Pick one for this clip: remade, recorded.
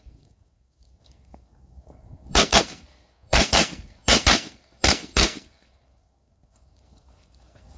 remade